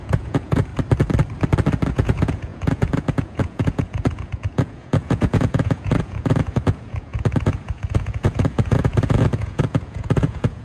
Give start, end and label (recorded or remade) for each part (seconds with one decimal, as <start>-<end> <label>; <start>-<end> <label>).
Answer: 0.0-0.7 remade; 0.7-1.9 recorded; 1.9-10.6 remade

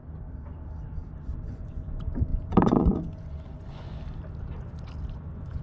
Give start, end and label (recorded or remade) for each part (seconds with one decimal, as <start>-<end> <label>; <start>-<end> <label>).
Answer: 0.0-1.3 recorded; 1.3-3.9 remade; 3.9-5.1 recorded; 5.1-5.6 remade

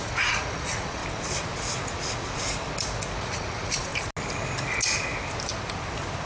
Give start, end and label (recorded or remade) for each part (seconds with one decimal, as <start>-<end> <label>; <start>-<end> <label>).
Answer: 0.0-1.0 remade; 1.0-3.2 recorded; 3.2-3.9 remade; 3.9-6.3 recorded

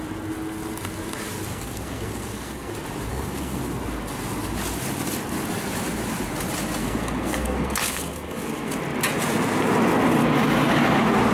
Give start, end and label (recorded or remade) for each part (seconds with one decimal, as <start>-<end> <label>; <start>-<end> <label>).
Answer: 0.0-1.5 recorded; 1.5-2.7 remade; 2.7-3.1 recorded; 3.1-3.6 remade; 3.6-6.8 recorded; 6.8-8.7 remade; 8.7-11.3 recorded

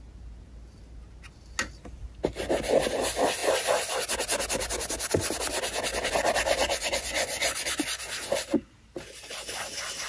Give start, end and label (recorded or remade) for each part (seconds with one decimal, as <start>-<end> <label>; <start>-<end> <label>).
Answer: 0.0-6.6 recorded; 6.6-8.0 remade; 8.0-10.1 recorded